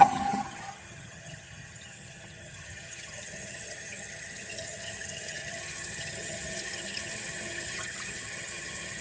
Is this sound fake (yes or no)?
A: yes